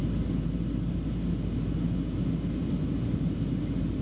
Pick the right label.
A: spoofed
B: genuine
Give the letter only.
B